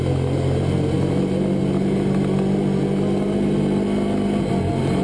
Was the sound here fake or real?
real